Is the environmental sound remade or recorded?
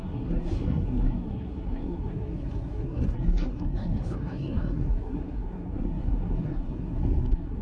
remade